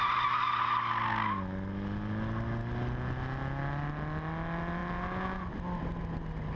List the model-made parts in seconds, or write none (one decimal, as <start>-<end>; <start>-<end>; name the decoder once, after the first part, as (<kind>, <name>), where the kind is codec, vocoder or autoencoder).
none